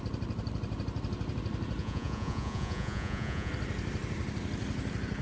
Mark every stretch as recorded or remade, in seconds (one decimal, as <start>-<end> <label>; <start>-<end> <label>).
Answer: 0.0-1.8 recorded; 1.8-3.5 remade; 3.5-5.2 recorded